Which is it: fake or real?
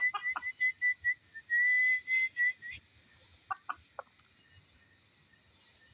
real